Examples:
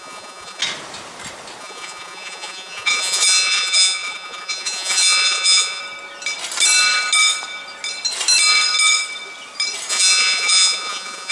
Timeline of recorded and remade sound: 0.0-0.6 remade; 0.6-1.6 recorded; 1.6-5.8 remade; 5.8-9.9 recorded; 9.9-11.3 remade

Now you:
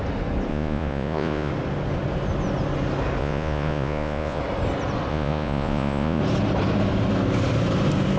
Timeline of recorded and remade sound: 0.0-0.5 recorded; 0.5-1.5 remade; 1.5-3.2 recorded; 3.2-4.4 remade; 4.4-5.1 recorded; 5.1-6.2 remade; 6.2-8.2 recorded